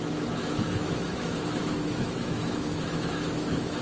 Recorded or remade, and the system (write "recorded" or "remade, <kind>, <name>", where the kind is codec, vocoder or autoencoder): remade, autoencoder, DAC-VAE